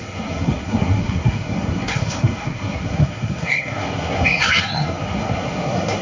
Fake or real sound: fake